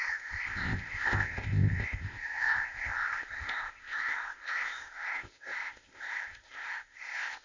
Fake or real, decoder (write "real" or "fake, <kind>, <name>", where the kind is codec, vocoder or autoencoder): fake, codec, ZipCodec